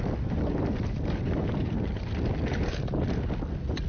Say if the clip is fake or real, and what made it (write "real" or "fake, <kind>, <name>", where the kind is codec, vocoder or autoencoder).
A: real